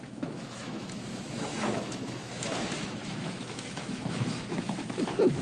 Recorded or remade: remade